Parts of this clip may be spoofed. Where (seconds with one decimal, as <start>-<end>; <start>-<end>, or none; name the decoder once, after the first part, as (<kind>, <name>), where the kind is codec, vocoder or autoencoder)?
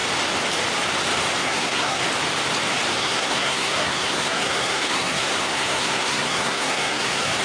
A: 1.4-2.0 (codec, SNAC); 3.0-7.4